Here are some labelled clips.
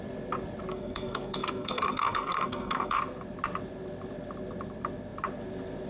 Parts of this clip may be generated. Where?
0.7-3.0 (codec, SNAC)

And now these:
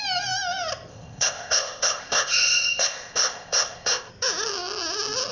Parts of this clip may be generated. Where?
0.9-4.1 (codec, ZipCodec)